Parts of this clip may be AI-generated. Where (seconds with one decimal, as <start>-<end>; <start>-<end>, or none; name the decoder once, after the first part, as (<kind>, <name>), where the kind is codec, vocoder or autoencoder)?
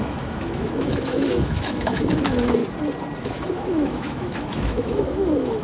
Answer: 0.0-2.6 (autoencoder, DAC-VAE); 3.2-5.6